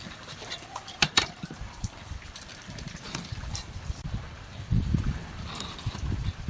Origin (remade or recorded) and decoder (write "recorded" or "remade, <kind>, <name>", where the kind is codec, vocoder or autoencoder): remade, vocoder, BigVGAN v2